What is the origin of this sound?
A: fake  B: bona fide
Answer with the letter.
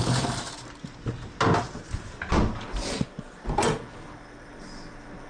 B